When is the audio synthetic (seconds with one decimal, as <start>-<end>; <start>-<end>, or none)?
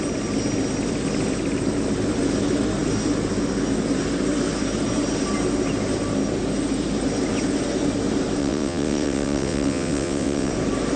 8.4-10.5